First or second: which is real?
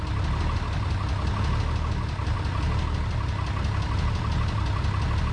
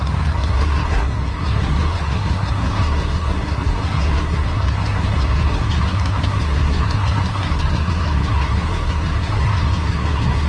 first